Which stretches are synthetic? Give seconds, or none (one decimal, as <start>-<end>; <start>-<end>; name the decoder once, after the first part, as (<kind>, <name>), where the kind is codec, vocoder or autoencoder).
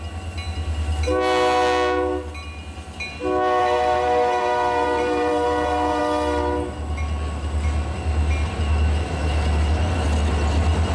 3.6-6.0 (vocoder, BigVGAN v2)